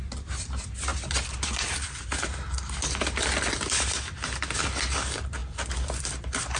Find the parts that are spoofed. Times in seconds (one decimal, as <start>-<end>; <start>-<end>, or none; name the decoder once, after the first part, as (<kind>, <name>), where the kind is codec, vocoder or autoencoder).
none